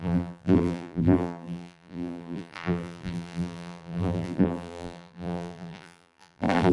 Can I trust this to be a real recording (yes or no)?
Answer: no